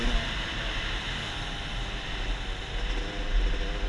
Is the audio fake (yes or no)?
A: no